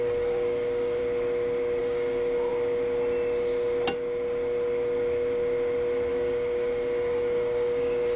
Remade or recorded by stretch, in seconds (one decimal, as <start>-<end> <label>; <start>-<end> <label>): 0.0-1.0 remade; 1.0-1.8 recorded; 1.8-2.5 remade; 2.5-6.1 recorded; 6.1-8.2 remade